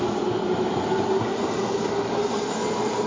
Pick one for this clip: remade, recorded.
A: recorded